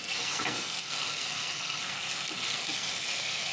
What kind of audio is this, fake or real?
fake